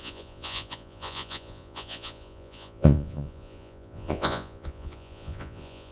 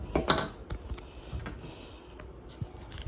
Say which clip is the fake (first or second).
first